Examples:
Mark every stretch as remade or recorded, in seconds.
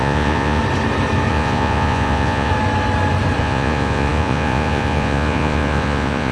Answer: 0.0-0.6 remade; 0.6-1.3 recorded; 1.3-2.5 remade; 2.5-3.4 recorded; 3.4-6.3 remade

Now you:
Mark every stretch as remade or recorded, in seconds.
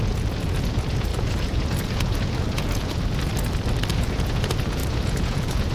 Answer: 0.0-3.3 remade; 3.3-3.9 recorded; 3.9-5.7 remade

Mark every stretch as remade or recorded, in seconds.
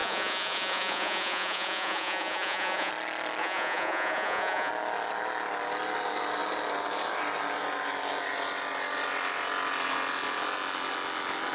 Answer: 0.0-2.9 remade; 2.9-3.4 recorded; 3.4-4.7 remade; 4.7-11.5 recorded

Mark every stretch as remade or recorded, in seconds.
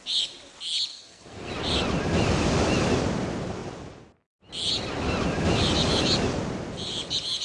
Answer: 0.0-0.9 recorded; 0.9-1.5 remade; 1.5-7.4 recorded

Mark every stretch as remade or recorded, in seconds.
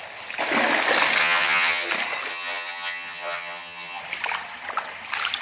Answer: 0.0-1.2 recorded; 1.2-1.9 remade; 1.9-2.3 recorded; 2.3-4.0 remade; 4.0-5.4 recorded